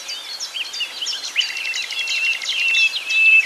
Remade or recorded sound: recorded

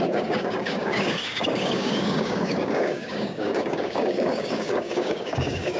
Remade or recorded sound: remade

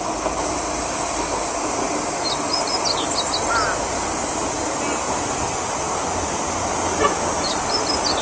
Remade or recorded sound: recorded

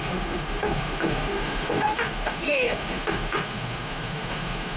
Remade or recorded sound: remade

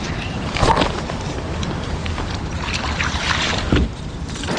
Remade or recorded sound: remade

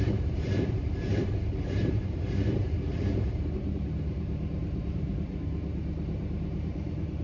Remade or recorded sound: remade